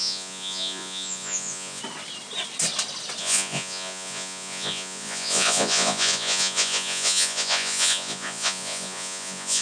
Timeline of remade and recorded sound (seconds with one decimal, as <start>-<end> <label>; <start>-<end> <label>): 0.0-1.8 remade; 1.8-3.2 recorded; 3.2-9.6 remade